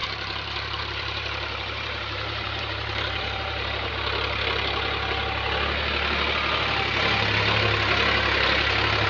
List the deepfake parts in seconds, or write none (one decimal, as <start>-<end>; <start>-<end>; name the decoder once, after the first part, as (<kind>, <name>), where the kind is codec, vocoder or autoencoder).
0.0-3.9 (vocoder, BigVGAN v2)